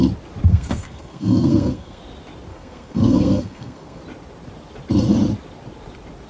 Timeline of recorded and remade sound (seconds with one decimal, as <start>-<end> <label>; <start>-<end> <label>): 0.0-0.5 recorded; 0.5-2.0 remade; 2.0-2.5 recorded; 2.5-4.0 remade; 4.0-6.3 recorded